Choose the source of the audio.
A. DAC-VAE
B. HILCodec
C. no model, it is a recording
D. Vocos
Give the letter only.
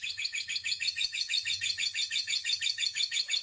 A